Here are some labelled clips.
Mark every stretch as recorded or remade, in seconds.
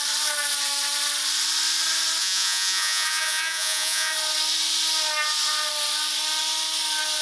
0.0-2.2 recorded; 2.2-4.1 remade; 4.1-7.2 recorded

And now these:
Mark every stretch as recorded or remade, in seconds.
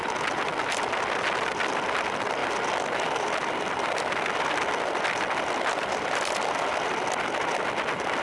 0.0-2.4 recorded; 2.4-7.0 remade; 7.0-8.2 recorded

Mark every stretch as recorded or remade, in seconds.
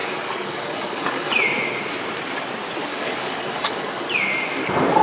0.0-1.3 remade; 1.3-2.9 recorded; 2.9-4.0 remade; 4.0-5.0 recorded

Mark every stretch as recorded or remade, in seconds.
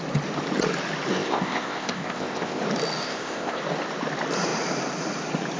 0.0-1.1 recorded; 1.1-2.6 remade; 2.6-3.0 recorded; 3.0-3.6 remade; 3.6-5.6 recorded